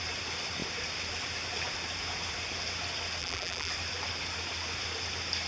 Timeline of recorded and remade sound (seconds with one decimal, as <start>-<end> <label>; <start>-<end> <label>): 0.0-3.2 recorded; 3.2-3.7 remade; 3.7-5.5 recorded